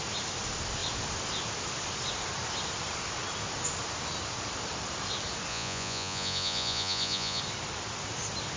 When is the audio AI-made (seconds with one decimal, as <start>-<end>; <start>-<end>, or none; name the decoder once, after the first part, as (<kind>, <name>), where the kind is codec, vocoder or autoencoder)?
5.5-7.4 (vocoder, Vocos)